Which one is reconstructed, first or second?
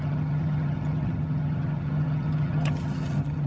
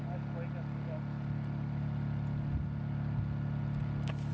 first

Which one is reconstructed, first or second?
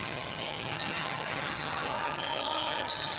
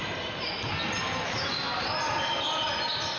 first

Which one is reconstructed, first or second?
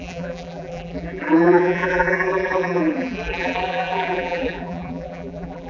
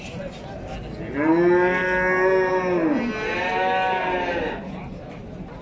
first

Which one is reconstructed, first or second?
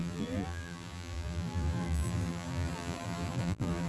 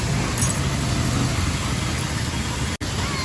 first